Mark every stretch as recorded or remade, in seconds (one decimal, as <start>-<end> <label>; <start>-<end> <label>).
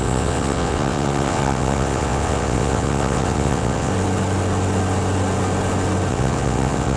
0.0-3.9 remade; 3.9-6.1 recorded; 6.1-7.0 remade